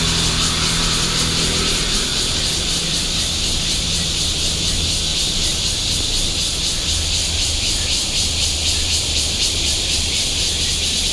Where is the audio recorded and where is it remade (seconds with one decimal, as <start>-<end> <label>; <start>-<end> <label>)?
0.0-2.1 recorded; 2.1-4.6 remade; 4.6-5.1 recorded; 5.1-5.6 remade; 5.6-7.2 recorded; 7.2-10.5 remade; 10.5-11.1 recorded